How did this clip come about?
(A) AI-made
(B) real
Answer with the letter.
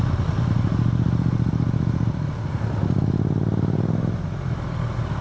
B